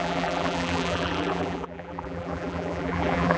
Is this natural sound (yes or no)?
no